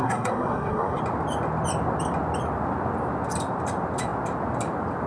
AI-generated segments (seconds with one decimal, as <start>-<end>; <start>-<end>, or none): 0.0-1.0